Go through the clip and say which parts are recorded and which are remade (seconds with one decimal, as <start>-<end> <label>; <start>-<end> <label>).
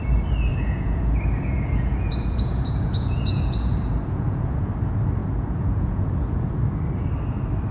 0.0-0.5 recorded; 0.5-4.7 remade; 4.7-5.2 recorded; 5.2-6.6 remade; 6.6-7.7 recorded